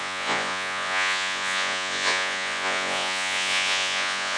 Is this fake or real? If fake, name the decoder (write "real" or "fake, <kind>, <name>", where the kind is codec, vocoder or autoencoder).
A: fake, vocoder, Vocos